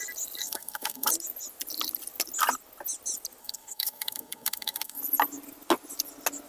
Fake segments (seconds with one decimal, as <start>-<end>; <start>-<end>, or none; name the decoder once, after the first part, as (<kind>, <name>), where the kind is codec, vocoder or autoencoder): 0.4-1.1 (codec, SNAC); 3.4-5.0

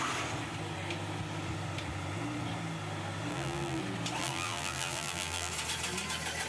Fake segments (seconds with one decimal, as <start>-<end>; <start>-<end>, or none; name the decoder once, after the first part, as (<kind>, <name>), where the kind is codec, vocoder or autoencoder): 3.3-3.8 (vocoder, BigVGAN v2); 4.2-5.5

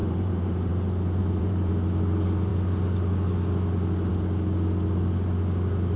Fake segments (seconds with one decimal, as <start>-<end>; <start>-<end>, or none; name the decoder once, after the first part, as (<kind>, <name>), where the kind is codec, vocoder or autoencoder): 0.0-0.7 (vocoder, BigVGAN v2); 1.2-1.7

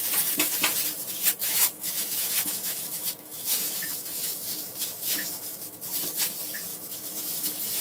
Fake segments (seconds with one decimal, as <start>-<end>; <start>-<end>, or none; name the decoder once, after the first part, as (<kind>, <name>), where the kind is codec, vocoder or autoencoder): 1.4-5.8 (autoencoder, DAC-VAE); 6.7-7.8

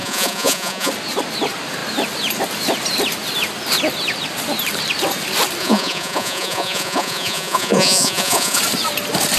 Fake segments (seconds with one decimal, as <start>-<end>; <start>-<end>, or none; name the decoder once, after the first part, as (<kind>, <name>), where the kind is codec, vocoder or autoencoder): 0.0-0.9 (vocoder, Vocos); 5.6-8.6

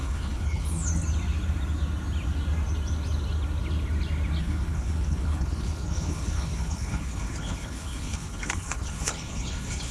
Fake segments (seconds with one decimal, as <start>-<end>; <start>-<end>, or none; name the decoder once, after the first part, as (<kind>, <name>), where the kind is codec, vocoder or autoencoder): 0.0-0.9 (codec, HILCodec); 4.4-9.9

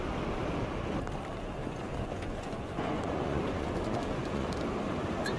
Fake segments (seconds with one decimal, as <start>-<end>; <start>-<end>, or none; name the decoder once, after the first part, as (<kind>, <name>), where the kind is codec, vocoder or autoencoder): 1.6-4.5 (vocoder, Vocos)

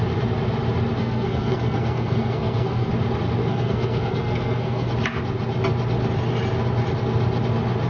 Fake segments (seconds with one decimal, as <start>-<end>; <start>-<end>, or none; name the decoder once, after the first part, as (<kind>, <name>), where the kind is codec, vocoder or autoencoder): 1.0-2.9 (codec, SNAC); 3.4-4.9